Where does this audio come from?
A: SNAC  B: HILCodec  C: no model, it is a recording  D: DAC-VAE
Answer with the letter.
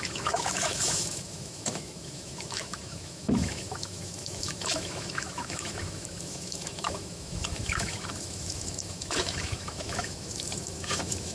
D